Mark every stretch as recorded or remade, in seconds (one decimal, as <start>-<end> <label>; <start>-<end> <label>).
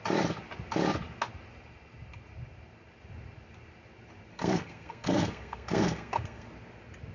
0.0-4.3 recorded; 4.3-6.5 remade; 6.5-7.1 recorded